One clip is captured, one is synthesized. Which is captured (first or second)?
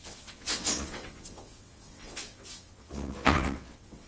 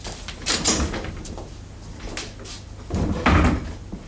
second